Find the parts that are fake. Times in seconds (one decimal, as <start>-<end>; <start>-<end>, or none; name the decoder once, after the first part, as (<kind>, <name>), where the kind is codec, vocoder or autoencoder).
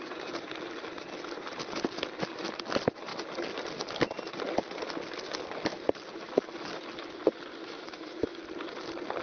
7.6-8.4 (autoencoder, DAC-VAE)